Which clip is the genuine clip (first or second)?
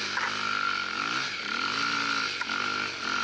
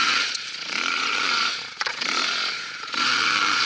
first